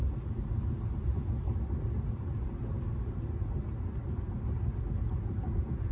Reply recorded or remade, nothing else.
recorded